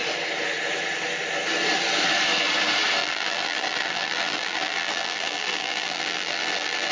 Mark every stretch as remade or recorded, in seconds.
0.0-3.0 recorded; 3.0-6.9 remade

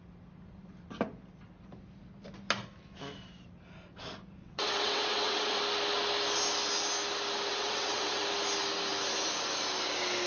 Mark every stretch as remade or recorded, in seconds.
0.0-4.4 recorded; 4.4-5.6 remade; 5.6-7.5 recorded; 7.5-8.2 remade; 8.2-10.3 recorded